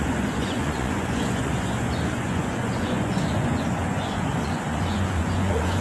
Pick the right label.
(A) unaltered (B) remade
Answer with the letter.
B